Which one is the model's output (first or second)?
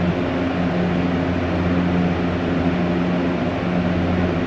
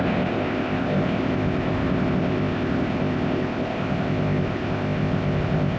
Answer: second